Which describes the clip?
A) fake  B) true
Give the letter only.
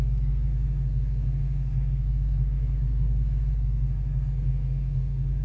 A